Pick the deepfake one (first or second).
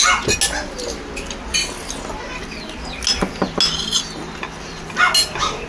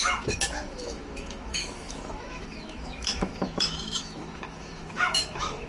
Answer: second